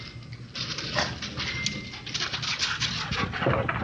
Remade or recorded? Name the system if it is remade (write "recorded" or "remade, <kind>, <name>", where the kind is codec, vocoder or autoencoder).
recorded